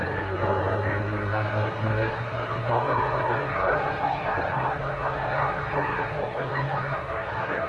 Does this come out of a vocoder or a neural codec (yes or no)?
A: yes